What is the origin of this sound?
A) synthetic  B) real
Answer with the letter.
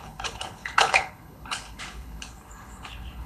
A